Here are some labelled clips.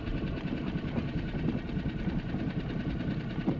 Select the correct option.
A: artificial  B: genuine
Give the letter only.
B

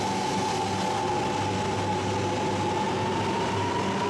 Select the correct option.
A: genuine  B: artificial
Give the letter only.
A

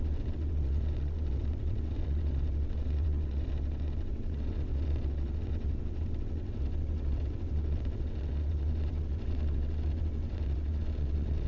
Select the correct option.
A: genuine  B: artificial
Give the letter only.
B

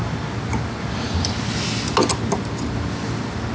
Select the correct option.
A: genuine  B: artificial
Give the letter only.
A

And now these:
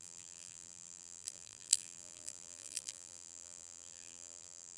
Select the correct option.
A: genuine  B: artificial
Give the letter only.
B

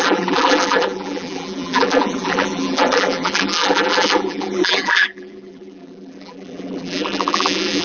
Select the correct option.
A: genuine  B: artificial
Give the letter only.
B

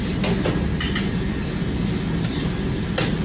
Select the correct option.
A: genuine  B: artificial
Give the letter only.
A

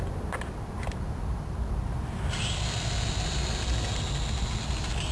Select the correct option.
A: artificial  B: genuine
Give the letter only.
B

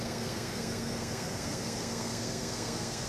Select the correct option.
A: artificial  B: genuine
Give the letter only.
A